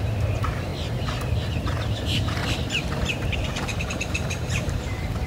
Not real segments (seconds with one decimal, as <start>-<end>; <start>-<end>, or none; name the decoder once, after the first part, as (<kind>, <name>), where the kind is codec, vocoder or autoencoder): 0.0-0.7 (vocoder, BigVGAN v2); 1.5-2.4; 3.1-5.3

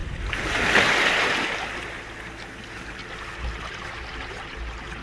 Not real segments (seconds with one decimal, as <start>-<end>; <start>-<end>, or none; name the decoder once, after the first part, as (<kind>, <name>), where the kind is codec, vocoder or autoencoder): none

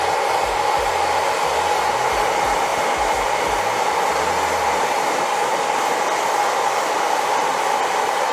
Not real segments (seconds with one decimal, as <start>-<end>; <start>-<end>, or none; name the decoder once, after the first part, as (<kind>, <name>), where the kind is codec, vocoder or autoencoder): none

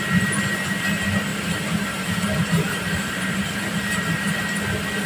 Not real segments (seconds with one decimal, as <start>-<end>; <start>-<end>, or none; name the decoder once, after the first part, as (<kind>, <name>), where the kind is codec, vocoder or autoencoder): 1.3-4.4 (vocoder, BigVGAN v2)